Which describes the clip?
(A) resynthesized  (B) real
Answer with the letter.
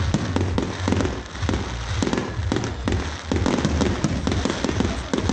B